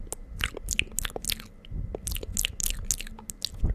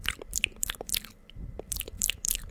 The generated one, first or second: second